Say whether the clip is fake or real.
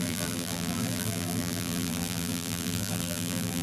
fake